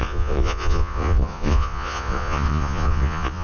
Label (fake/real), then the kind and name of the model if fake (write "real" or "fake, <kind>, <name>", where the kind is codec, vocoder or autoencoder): fake, vocoder, Vocos